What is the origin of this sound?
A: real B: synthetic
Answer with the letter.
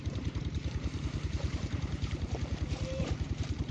B